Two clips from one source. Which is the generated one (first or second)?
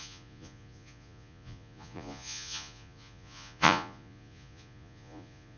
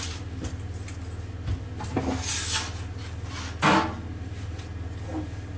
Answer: first